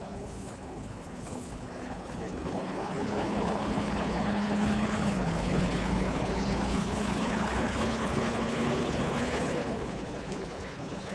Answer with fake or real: fake